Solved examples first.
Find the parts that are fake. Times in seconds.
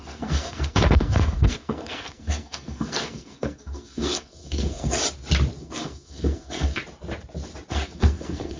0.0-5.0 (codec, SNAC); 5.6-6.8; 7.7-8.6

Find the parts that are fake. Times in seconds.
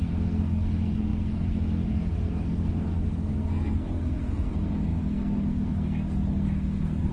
0.0-7.1 (codec, SNAC)